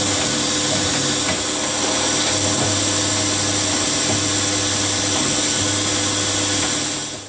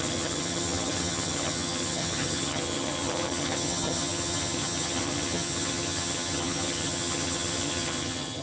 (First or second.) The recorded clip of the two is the first